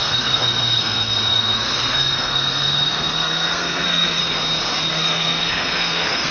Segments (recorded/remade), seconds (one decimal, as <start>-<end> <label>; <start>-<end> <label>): 0.0-4.2 remade; 4.2-4.9 recorded; 4.9-6.3 remade